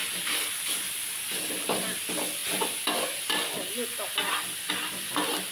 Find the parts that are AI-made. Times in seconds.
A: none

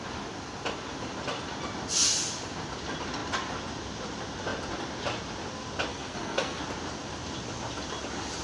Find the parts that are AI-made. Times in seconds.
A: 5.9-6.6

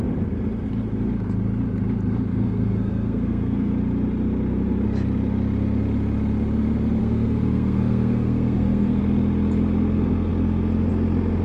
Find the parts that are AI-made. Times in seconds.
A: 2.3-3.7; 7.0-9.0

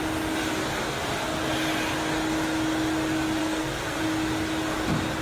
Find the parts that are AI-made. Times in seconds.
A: 3.4-4.0

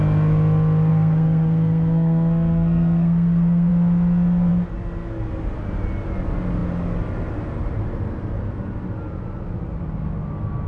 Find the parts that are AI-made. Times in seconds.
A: 0.9-3.7

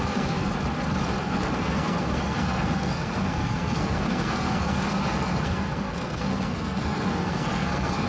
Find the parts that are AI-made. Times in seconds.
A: 0.0-0.5; 1.2-8.1

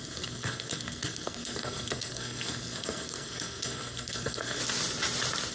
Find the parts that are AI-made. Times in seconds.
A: 0.0-4.6

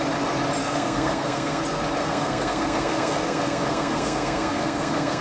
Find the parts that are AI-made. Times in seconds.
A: 0.6-1.6; 2.0-5.2